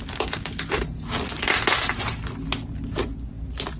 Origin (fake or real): real